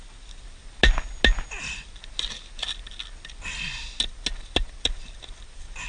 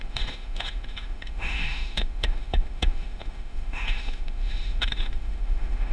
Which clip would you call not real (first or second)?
second